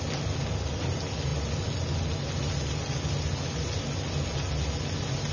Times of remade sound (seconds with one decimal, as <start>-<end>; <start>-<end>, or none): none